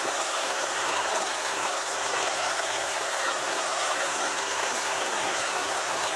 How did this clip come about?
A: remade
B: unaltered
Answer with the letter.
A